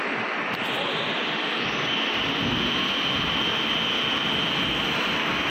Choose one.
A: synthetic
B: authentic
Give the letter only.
B